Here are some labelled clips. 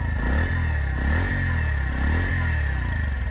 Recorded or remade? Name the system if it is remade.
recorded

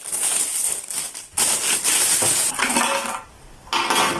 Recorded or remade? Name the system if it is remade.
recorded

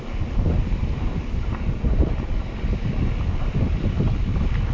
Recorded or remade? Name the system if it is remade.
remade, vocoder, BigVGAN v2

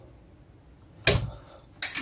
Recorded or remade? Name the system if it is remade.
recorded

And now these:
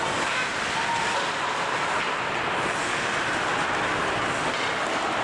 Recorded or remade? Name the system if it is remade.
recorded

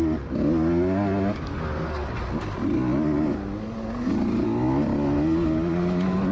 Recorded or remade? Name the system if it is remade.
recorded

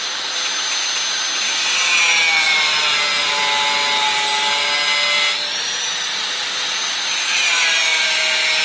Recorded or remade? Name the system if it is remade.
recorded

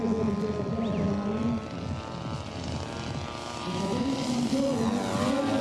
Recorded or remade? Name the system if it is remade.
recorded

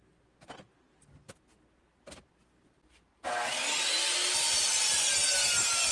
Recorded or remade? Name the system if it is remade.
recorded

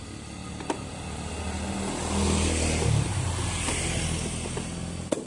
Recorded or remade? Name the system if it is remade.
recorded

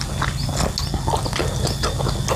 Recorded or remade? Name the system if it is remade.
recorded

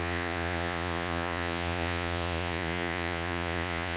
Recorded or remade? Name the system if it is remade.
remade, vocoder, Vocos